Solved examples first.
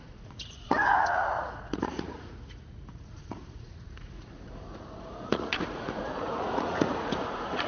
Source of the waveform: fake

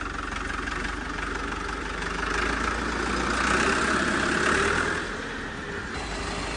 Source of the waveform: real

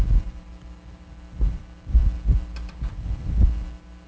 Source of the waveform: real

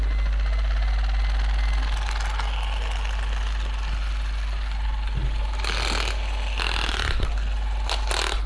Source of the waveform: real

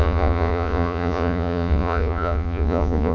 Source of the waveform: fake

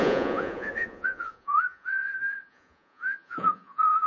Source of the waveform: fake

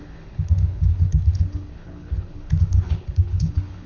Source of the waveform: fake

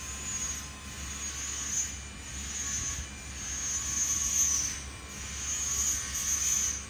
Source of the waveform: real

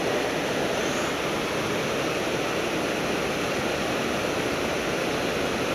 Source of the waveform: real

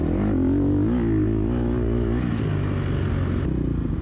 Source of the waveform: real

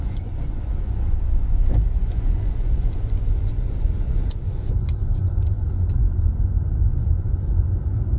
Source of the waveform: fake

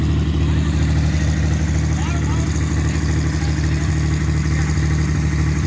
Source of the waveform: real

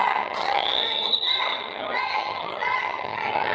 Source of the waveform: fake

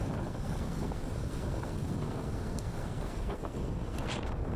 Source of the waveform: fake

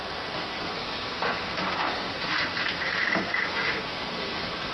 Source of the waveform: fake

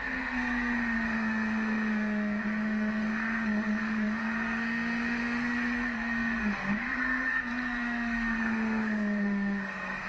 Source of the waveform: fake